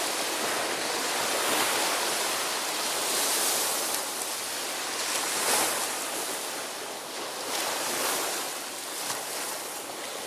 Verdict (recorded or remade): recorded